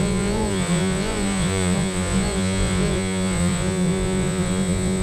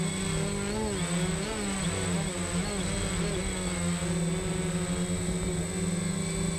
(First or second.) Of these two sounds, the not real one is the first